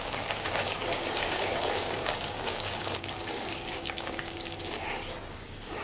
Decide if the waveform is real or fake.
fake